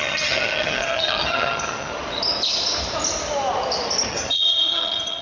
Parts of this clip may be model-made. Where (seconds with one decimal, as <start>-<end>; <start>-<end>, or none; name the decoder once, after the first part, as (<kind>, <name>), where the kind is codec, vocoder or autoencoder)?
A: 0.0-1.9 (vocoder, HiFi-GAN); 4.1-5.2